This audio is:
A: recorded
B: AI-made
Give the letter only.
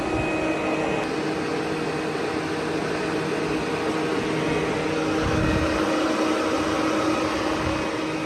A